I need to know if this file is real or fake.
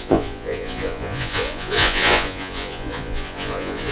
fake